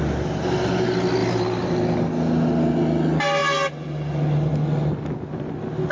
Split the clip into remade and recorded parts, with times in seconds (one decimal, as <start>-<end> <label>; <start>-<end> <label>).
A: 0.0-1.2 recorded; 1.2-1.7 remade; 1.7-5.9 recorded